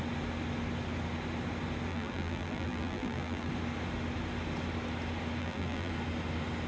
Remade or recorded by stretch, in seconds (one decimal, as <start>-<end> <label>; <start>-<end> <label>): 0.0-1.9 recorded; 1.9-3.5 remade; 3.5-5.4 recorded; 5.4-5.9 remade; 5.9-6.7 recorded

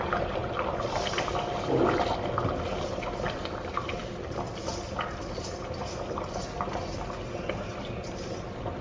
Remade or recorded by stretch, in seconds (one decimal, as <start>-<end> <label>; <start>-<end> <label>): 0.0-8.8 recorded